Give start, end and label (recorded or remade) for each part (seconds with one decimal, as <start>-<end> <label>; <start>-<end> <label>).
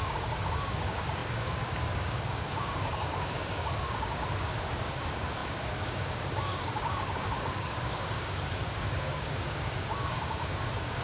0.0-11.0 remade